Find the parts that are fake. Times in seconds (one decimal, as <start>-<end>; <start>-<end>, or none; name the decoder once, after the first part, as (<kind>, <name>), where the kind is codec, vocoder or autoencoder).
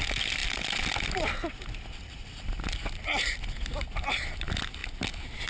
none